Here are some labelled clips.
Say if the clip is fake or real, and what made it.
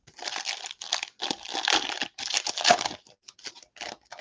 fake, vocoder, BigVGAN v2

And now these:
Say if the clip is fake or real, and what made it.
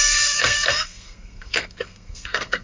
fake, codec, SNAC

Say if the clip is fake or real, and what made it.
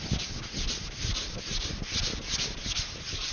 real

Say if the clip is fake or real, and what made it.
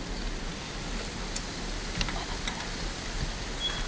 real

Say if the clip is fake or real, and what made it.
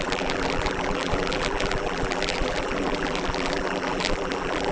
fake, vocoder, BigVGAN v2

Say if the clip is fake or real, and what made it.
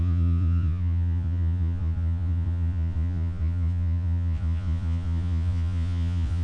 fake, vocoder, Vocos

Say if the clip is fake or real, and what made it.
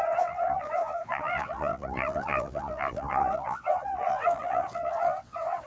fake, vocoder, WaveNeXt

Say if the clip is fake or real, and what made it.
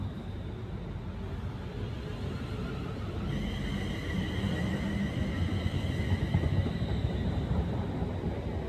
real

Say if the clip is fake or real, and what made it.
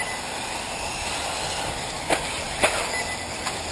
real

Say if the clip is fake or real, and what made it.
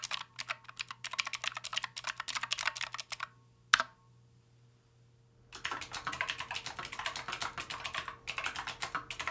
real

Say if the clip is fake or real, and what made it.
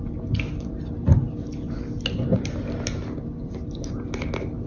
real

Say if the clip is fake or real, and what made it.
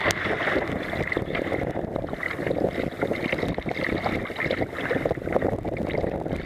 real